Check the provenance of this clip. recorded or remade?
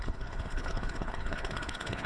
remade